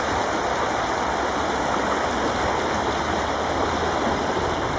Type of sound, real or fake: real